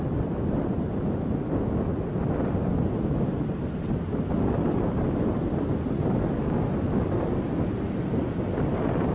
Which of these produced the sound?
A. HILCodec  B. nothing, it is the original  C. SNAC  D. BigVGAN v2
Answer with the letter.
B